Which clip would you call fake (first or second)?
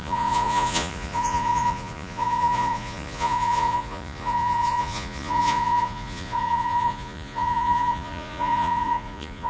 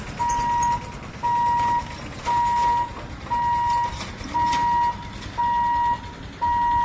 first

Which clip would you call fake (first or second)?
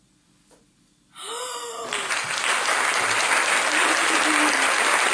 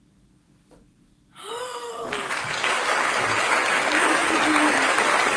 second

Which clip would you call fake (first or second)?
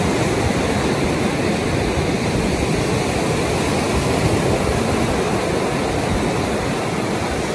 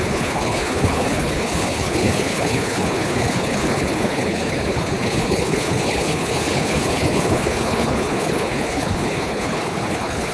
second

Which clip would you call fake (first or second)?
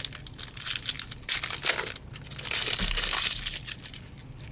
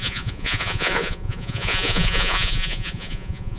second